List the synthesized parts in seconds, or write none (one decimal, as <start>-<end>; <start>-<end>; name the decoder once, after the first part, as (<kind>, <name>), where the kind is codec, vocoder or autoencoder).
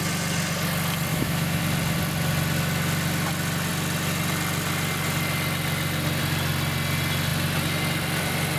1.1-1.6 (autoencoder, DAC-VAE)